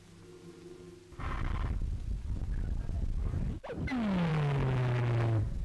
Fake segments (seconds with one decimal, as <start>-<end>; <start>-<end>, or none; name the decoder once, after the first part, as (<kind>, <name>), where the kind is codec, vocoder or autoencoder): none